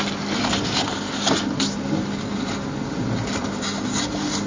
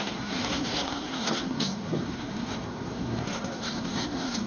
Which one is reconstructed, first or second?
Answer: second